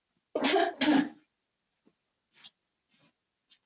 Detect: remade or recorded recorded